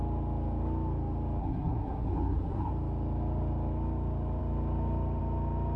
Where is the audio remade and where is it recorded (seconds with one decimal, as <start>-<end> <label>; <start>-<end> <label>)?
0.0-1.4 recorded; 1.4-2.7 remade; 2.7-5.8 recorded